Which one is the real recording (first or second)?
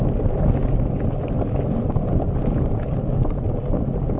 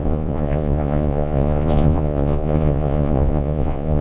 first